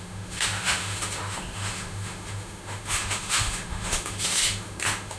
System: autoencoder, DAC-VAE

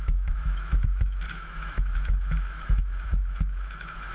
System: autoencoder, DAC-VAE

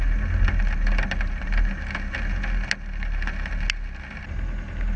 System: none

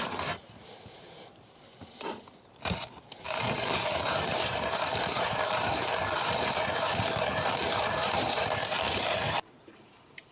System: vocoder, BigVGAN v2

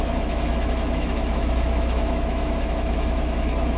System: autoencoder, DAC-VAE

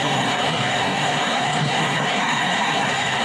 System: codec, SNAC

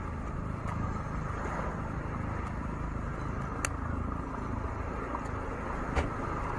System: none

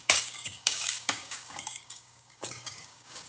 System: codec, DAC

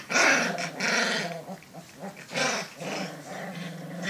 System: none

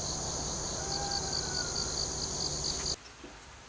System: none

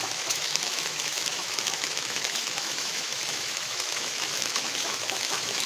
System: autoencoder, DAC-VAE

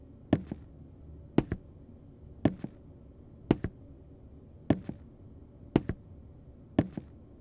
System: none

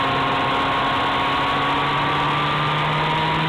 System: none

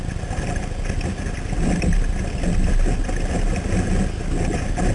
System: none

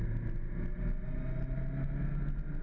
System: none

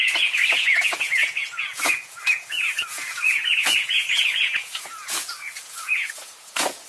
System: vocoder, Vocos